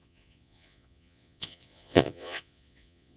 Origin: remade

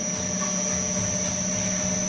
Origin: recorded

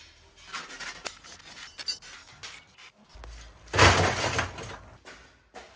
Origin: recorded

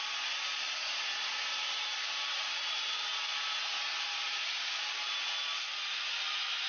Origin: recorded